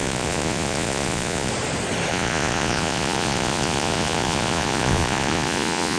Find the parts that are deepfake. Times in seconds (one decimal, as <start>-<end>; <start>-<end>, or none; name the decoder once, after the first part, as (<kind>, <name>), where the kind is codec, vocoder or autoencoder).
0.0-1.5 (vocoder, Vocos); 2.1-6.0